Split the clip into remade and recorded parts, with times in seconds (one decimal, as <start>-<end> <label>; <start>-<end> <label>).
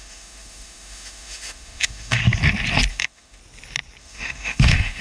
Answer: 0.0-2.2 remade; 2.2-2.9 recorded; 2.9-3.4 remade; 3.4-4.0 recorded; 4.0-5.0 remade